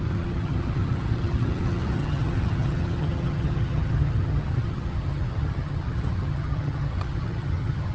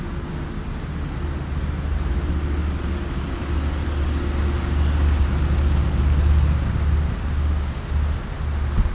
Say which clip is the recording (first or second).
second